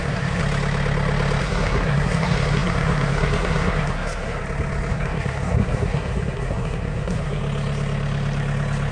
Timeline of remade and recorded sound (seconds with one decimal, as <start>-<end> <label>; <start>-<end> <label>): 0.0-0.4 remade; 0.4-1.4 recorded; 1.4-4.4 remade; 4.4-4.9 recorded; 4.9-7.4 remade; 7.4-8.9 recorded